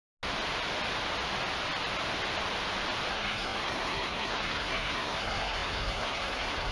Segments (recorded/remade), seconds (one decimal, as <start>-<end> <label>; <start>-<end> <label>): 0.0-3.1 recorded; 3.1-6.7 remade